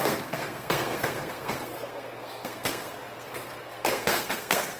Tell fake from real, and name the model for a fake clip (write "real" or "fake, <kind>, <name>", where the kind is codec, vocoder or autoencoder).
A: fake, codec, SNAC